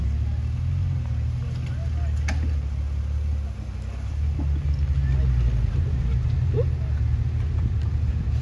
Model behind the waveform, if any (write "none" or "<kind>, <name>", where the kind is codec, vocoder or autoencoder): none